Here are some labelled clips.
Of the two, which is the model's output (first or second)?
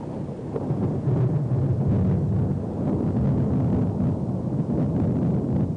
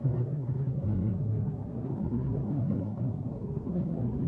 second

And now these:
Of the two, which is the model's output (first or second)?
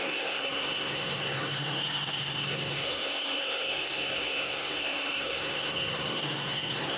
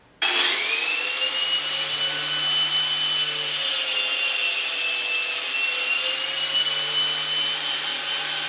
first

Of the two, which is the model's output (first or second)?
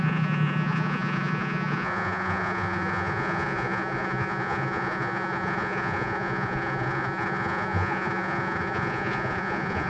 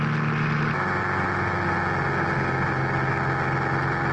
first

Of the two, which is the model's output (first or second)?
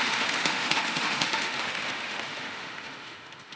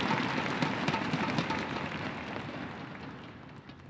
first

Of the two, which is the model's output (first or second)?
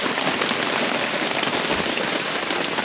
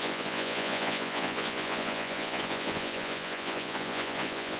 second